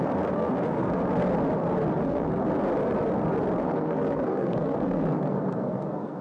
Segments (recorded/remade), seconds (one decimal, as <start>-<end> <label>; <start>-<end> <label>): 0.0-1.0 remade; 1.0-2.0 recorded; 2.0-2.4 remade; 2.4-3.6 recorded; 3.6-6.2 remade